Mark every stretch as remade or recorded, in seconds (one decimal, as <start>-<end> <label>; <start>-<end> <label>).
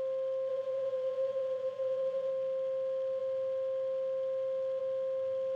0.0-0.5 recorded; 0.5-2.3 remade; 2.3-5.6 recorded